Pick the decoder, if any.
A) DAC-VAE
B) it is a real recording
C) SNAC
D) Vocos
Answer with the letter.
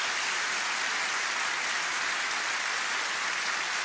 B